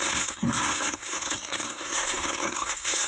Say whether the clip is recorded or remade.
remade